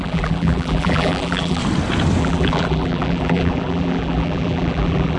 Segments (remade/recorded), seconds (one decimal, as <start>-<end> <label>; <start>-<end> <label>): 0.0-1.6 remade; 1.6-2.2 recorded; 2.2-5.2 remade